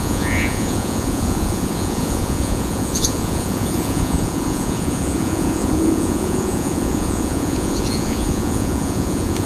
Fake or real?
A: fake